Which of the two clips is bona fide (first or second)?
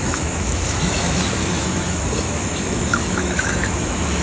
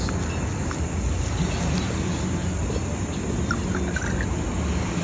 second